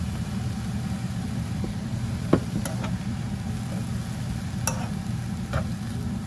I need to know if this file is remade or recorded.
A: recorded